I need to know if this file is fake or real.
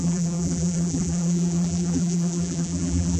fake